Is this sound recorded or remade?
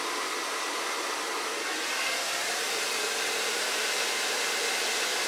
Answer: recorded